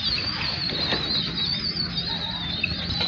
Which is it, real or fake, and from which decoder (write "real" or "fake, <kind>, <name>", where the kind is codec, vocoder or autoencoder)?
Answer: real